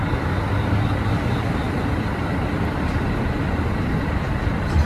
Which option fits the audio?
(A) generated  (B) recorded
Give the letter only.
B